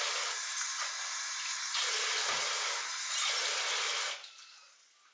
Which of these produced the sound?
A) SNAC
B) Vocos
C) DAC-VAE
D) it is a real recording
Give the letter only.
D